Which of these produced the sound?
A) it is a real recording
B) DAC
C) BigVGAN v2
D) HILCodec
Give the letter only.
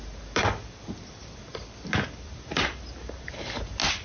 A